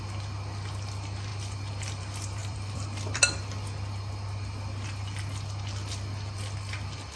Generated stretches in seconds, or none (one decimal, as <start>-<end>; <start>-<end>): 2.4-3.2